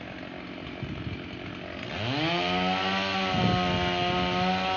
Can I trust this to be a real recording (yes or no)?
yes